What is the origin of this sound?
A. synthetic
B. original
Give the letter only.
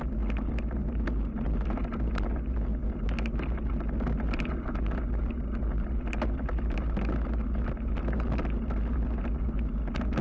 B